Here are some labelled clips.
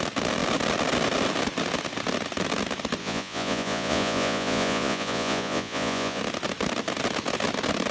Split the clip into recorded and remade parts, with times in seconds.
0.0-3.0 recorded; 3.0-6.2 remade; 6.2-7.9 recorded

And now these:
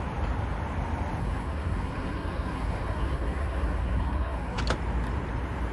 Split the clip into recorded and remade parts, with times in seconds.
0.0-1.2 recorded; 1.2-4.6 remade; 4.6-5.7 recorded

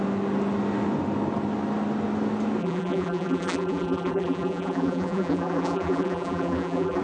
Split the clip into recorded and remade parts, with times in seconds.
0.0-2.6 recorded; 2.6-7.0 remade

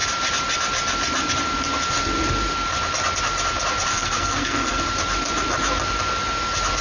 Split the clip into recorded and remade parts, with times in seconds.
0.0-3.9 recorded; 3.9-4.8 remade; 4.8-6.8 recorded